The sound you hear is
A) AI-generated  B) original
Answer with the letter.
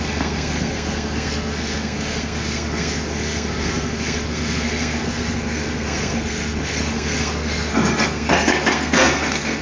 A